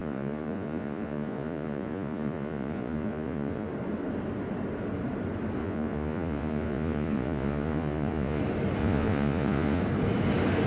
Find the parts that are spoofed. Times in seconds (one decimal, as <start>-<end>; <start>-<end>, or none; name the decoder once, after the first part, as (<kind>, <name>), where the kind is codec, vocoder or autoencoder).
0.0-3.7 (vocoder, Vocos); 5.6-8.4; 8.8-9.8